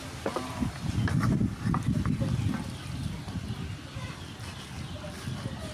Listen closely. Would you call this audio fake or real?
real